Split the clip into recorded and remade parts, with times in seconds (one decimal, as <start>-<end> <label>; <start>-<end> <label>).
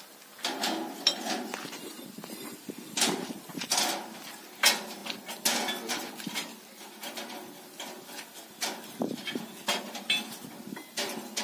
0.0-11.4 recorded